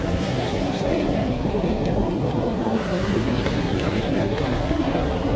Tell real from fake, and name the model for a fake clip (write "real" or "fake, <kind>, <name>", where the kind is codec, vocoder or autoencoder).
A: fake, codec, SNAC